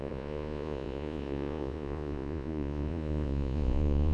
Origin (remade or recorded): remade